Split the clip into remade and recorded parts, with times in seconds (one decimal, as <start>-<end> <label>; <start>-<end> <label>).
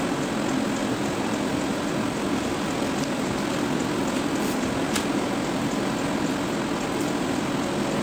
0.0-0.8 recorded; 0.8-5.6 remade; 5.6-8.0 recorded